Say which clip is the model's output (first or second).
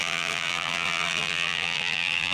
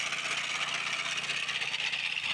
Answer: first